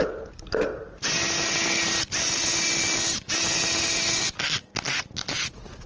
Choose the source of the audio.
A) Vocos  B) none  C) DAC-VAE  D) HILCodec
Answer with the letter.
B